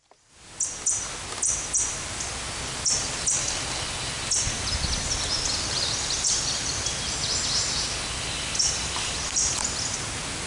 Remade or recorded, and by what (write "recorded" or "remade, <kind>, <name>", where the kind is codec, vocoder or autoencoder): recorded